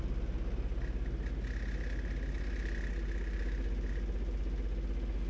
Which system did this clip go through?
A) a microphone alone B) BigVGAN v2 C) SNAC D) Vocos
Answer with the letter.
A